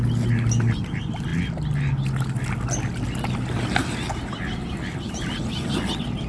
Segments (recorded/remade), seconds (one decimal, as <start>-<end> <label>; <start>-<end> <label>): 0.0-6.3 recorded